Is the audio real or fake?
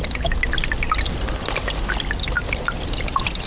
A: real